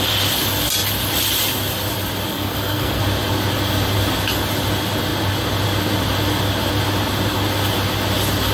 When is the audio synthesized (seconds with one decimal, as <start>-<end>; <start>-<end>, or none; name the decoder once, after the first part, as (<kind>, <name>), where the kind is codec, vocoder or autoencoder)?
2.3-3.0 (codec, SNAC)